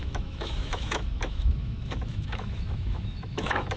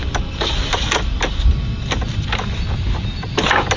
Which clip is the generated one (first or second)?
first